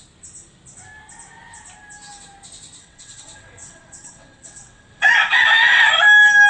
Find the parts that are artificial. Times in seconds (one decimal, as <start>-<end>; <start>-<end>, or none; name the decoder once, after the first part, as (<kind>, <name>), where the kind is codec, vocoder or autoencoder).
2.8-5.9 (vocoder, WaveNeXt)